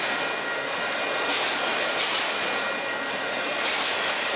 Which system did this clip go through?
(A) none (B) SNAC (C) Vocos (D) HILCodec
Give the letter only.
A